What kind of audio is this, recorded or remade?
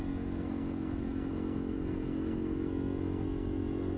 remade